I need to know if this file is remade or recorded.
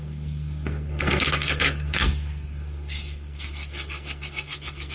remade